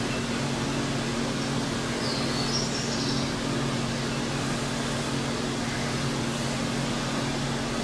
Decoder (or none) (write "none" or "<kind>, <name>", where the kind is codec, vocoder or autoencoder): none